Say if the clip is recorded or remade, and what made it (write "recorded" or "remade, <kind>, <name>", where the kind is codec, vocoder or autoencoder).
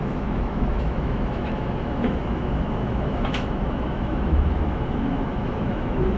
remade, autoencoder, DAC-VAE